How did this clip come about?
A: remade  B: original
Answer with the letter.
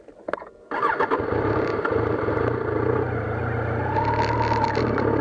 B